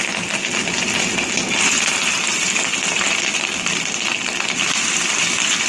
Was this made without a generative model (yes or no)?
yes